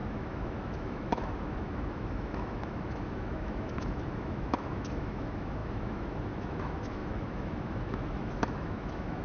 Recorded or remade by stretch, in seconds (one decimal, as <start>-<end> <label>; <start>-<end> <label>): 0.0-9.2 remade